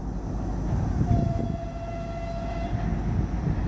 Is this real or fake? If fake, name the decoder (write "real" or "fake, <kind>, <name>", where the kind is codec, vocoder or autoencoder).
real